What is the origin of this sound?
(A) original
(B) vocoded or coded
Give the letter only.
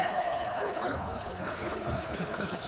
B